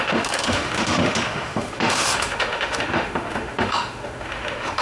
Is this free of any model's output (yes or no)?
no